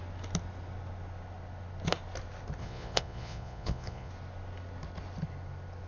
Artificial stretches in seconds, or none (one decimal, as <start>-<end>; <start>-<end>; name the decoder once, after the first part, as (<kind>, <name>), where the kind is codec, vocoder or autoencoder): 2.6-4.1 (vocoder, Vocos)